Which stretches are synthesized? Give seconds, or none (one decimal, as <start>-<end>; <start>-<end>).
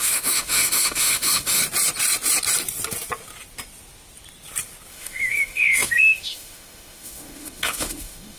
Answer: 0.0-1.6; 4.9-8.4